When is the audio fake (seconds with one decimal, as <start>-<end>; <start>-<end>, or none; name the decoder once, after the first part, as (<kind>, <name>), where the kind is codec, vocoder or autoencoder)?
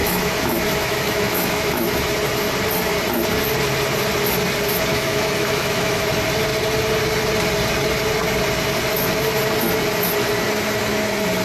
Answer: 0.0-2.0 (autoencoder, DAC-VAE); 4.9-6.1